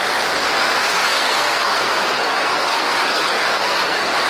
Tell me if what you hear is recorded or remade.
remade